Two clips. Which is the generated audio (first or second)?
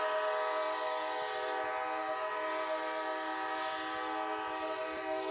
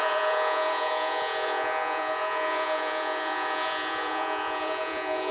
second